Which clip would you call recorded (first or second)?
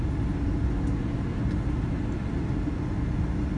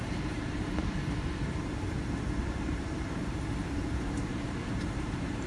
first